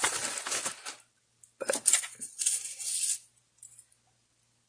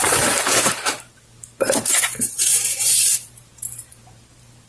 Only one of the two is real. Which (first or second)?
first